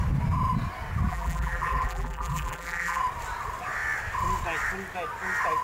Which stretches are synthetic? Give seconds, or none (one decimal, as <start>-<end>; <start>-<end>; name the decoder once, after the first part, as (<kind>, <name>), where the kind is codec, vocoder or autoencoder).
1.1-3.0 (vocoder, BigVGAN v2)